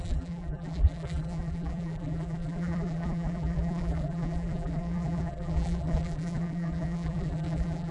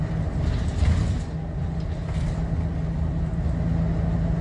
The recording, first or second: second